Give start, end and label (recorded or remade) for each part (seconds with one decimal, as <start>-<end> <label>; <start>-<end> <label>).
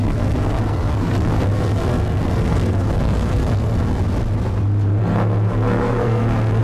0.0-4.0 remade; 4.0-5.0 recorded; 5.0-6.6 remade